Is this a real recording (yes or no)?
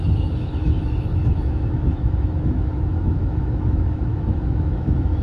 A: no